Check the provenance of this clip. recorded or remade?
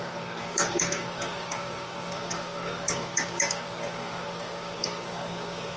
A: remade